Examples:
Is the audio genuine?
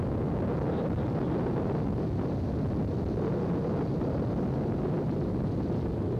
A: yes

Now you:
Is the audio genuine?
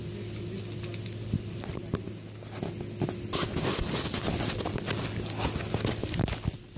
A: yes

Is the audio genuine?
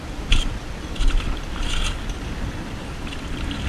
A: yes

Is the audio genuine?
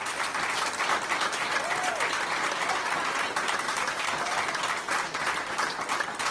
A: yes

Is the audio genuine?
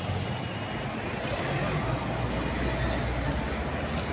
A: yes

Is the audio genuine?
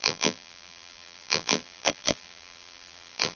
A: no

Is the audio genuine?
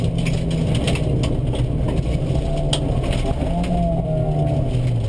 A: yes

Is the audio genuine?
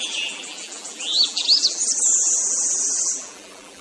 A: no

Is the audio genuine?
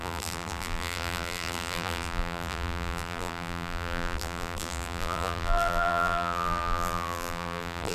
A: no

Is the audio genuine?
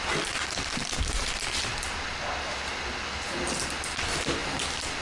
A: yes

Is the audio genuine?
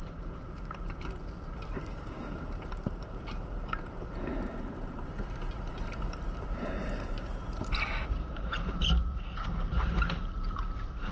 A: no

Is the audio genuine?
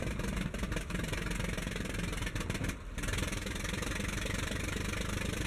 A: no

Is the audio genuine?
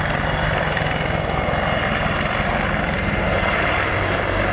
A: no